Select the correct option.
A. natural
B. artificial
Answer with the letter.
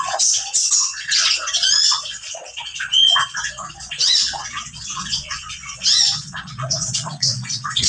B